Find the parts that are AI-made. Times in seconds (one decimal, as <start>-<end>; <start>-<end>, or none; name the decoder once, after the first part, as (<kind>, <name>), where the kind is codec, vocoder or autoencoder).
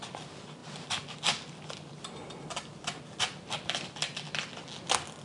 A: none